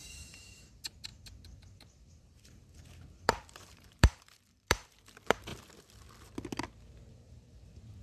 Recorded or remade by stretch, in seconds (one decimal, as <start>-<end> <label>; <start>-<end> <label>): 0.0-5.5 remade; 5.5-7.1 recorded; 7.1-8.0 remade

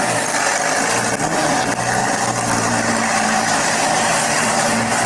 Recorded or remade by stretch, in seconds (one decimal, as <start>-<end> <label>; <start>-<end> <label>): 0.0-2.0 recorded; 2.0-4.1 remade; 4.1-5.1 recorded

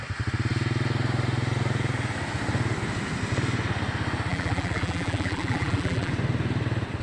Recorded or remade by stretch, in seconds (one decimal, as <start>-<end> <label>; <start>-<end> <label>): 0.0-4.3 recorded; 4.3-6.1 remade; 6.1-7.0 recorded

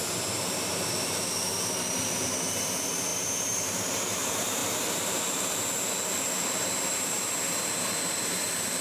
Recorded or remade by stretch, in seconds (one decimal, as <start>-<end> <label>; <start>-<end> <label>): 0.0-8.8 remade

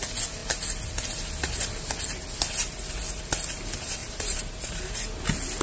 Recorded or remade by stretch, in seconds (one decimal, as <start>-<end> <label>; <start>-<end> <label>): 0.0-4.0 recorded; 4.0-4.8 remade; 4.8-5.6 recorded

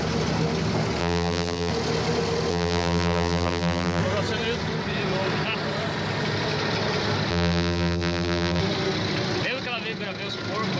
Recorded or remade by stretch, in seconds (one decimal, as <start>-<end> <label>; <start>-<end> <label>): 0.0-1.0 recorded; 1.0-1.7 remade; 1.7-2.5 recorded; 2.5-4.0 remade; 4.0-7.3 recorded; 7.3-8.6 remade; 8.6-10.8 recorded

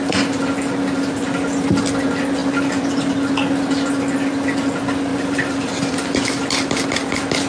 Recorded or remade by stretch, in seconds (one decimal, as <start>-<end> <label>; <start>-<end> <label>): 0.0-5.1 recorded; 5.1-5.7 remade; 5.7-7.5 recorded